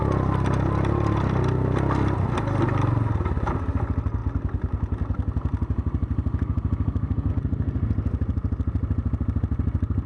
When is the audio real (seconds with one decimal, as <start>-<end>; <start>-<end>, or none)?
0.0-10.1